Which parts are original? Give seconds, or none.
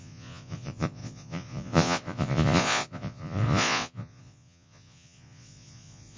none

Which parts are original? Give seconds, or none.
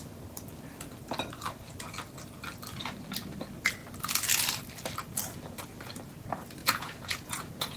0.0-6.6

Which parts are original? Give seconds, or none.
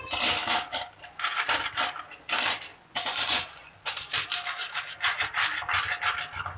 0.0-2.7; 3.7-6.6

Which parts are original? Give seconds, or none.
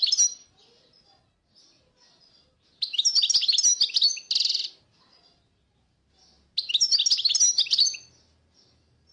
0.0-9.1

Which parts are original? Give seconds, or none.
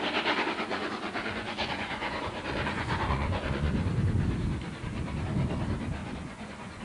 0.0-0.7; 3.7-6.0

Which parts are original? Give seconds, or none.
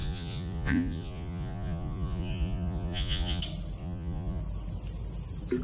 3.4-3.8; 4.4-5.6